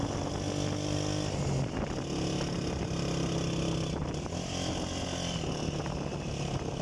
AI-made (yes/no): no